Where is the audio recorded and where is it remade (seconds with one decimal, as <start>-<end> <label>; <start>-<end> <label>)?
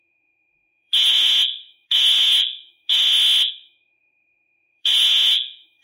0.0-3.0 remade; 3.0-3.5 recorded; 3.5-5.8 remade